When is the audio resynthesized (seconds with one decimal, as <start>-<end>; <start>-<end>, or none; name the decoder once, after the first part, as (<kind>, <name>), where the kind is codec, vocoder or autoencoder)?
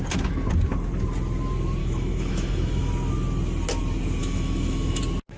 1.8-2.9 (autoencoder, DAC-VAE); 4.2-5.0